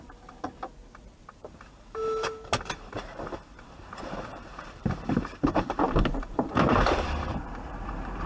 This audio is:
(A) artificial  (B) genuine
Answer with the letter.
A